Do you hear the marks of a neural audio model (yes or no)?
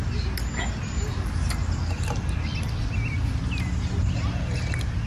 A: no